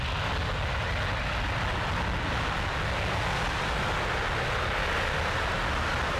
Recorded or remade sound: recorded